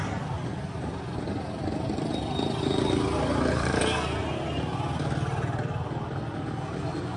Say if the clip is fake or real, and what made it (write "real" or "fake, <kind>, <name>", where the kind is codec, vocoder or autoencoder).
real